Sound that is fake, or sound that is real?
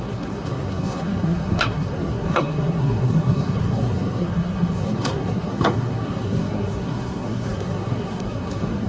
fake